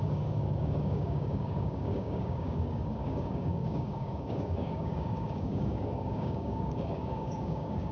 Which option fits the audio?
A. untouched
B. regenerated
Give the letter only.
B